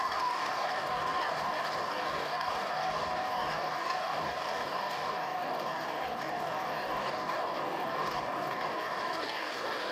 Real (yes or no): no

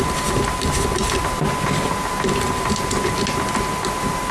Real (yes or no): yes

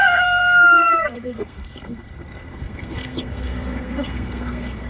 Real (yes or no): no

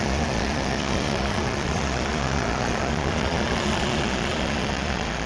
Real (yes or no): no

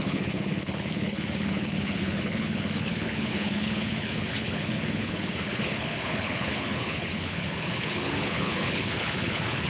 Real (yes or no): no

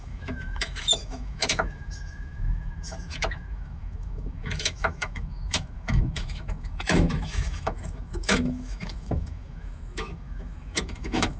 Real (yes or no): no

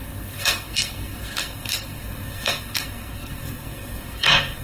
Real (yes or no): no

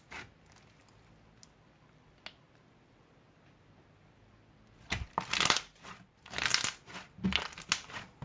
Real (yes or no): yes